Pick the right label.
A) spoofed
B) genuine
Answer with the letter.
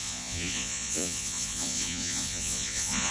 A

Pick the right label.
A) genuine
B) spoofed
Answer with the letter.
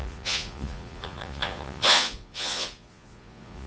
B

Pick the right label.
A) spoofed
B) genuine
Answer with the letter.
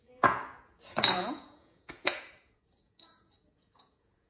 A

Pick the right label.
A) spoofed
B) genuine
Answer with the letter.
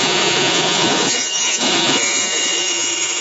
A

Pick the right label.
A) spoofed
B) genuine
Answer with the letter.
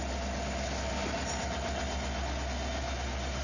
B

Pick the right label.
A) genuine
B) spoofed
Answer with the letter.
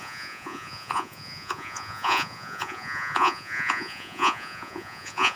B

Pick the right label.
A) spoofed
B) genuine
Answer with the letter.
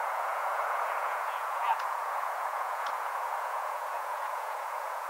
A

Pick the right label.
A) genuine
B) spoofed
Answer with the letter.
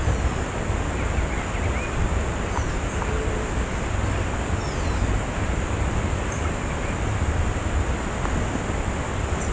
A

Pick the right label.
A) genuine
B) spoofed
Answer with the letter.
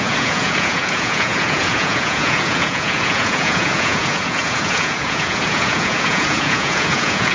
B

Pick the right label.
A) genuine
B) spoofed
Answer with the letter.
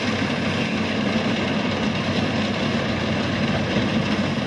A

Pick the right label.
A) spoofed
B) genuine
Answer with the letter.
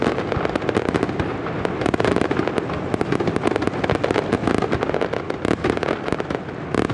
B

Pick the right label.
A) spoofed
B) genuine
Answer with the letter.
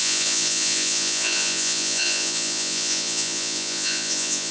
A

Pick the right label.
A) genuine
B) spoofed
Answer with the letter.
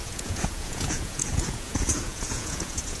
B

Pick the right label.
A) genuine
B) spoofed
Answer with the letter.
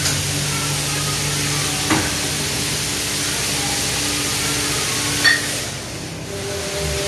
A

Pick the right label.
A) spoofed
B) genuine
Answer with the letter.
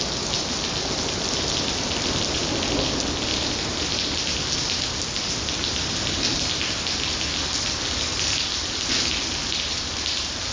B